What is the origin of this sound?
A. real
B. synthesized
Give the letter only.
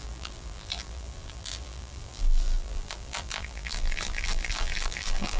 B